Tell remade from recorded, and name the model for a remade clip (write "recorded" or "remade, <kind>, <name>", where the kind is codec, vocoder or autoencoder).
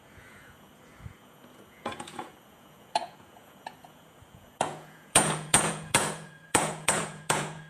remade, vocoder, Vocos